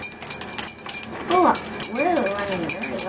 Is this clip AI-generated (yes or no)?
no